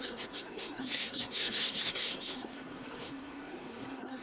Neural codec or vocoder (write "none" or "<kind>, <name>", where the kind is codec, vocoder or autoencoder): codec, SNAC